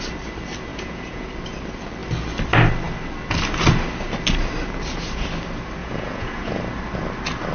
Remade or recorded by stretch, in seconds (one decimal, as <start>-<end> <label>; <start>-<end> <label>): 0.0-0.7 recorded; 0.7-1.3 remade; 1.3-5.8 recorded; 5.8-6.6 remade; 6.6-7.5 recorded